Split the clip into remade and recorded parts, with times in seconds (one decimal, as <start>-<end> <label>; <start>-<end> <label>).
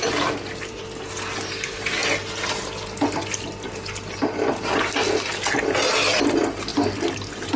0.0-7.6 recorded